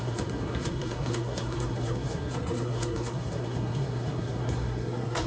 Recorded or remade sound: remade